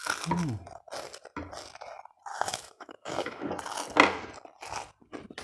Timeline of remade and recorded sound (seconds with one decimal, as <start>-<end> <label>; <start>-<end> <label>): 0.0-2.3 recorded; 2.3-3.5 remade; 3.5-5.4 recorded